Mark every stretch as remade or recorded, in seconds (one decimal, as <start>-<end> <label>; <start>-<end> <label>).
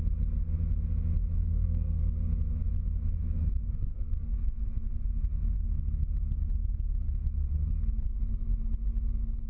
0.0-1.4 recorded; 1.4-2.0 remade; 2.0-3.4 recorded; 3.4-4.6 remade; 4.6-9.5 recorded